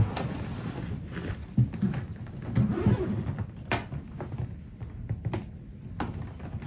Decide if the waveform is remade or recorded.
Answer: recorded